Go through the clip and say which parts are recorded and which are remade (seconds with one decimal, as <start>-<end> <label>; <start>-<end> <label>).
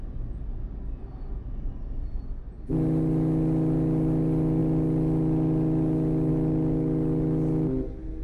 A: 0.0-8.2 recorded